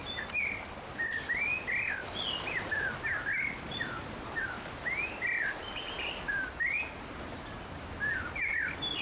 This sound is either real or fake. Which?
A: real